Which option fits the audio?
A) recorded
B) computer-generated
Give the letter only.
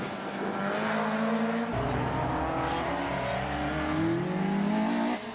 A